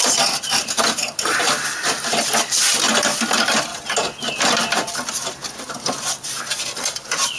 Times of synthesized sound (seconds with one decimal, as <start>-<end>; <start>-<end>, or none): 0.0-2.7; 3.3-3.7; 5.7-7.4